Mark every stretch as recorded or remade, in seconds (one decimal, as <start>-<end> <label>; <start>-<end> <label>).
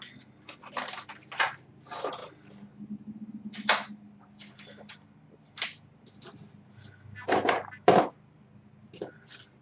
0.0-9.6 recorded